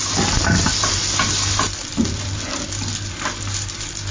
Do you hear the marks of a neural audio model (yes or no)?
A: no